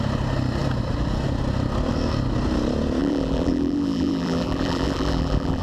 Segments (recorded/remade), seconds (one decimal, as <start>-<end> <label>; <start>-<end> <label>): 0.0-3.0 recorded; 3.0-5.6 remade